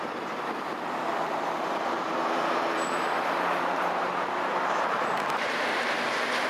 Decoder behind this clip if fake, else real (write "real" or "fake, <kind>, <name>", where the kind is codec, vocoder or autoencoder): fake, vocoder, BigVGAN v2